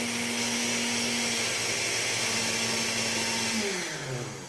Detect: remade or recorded recorded